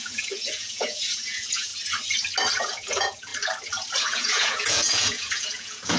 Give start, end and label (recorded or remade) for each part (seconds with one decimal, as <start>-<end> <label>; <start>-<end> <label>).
0.0-1.7 remade; 1.7-2.6 recorded; 2.6-3.3 remade; 3.3-4.0 recorded; 4.0-6.0 remade